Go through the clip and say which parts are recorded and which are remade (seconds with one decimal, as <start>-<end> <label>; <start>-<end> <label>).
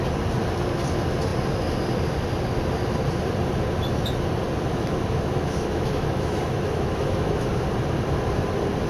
0.0-4.7 recorded; 4.7-7.5 remade; 7.5-8.9 recorded